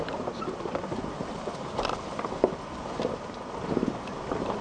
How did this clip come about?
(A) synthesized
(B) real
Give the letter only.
B